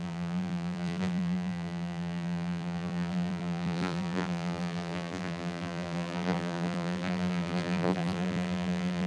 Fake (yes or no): yes